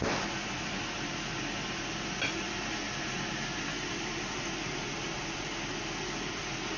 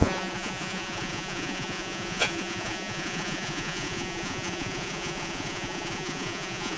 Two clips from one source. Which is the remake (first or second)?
second